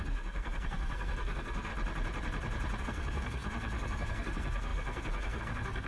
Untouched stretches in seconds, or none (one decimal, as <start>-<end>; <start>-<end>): 1.7-2.8